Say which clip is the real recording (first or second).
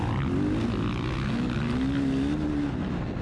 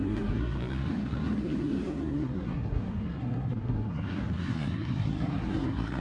first